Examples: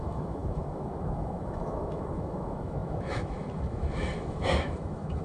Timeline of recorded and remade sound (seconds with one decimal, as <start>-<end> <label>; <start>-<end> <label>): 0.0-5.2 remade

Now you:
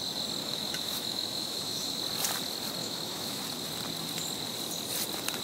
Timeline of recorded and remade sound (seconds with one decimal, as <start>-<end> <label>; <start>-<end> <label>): 0.0-0.4 recorded; 0.4-2.0 remade; 2.0-2.8 recorded; 2.8-3.4 remade; 3.4-5.4 recorded

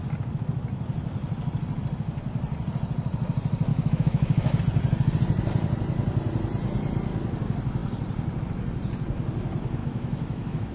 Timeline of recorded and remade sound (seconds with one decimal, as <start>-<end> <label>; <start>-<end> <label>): 0.0-3.7 recorded; 3.7-4.6 remade; 4.6-9.8 recorded; 9.8-10.7 remade

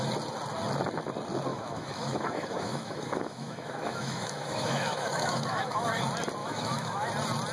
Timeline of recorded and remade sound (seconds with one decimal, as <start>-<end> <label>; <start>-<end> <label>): 0.0-1.5 recorded; 1.5-6.0 remade; 6.0-6.4 recorded; 6.4-7.1 remade; 7.1-7.5 recorded

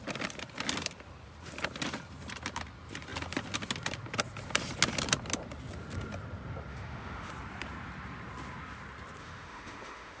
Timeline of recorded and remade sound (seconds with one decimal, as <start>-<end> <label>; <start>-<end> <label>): 0.0-6.7 recorded; 6.7-7.3 remade; 7.3-9.2 recorded; 9.2-10.2 remade

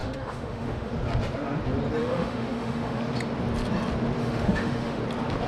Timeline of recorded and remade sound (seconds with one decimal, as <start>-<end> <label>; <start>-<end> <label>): 0.0-0.9 remade; 0.9-2.0 recorded; 2.0-3.0 remade; 3.0-4.2 recorded; 4.2-5.0 remade; 5.0-5.5 recorded